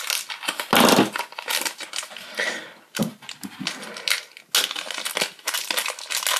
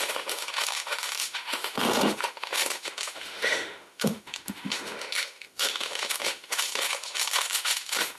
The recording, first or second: first